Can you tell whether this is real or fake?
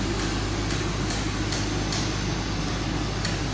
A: real